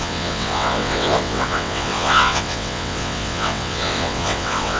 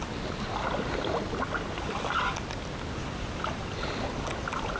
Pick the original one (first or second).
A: second